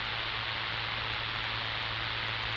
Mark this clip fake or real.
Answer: real